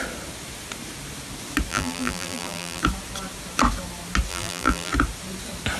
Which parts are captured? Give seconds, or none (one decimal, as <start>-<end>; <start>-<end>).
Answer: 0.0-1.7; 2.8-4.3; 4.9-5.8